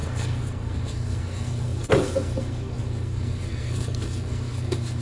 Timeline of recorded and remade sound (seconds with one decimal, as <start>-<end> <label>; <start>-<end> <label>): 0.0-5.0 remade